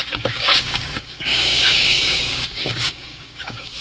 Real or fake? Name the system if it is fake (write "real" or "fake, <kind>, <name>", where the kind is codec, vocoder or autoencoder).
fake, codec, DAC